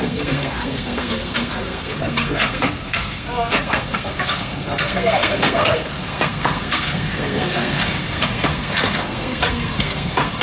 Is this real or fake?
fake